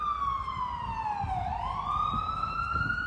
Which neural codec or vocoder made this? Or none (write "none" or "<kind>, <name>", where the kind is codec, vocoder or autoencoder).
none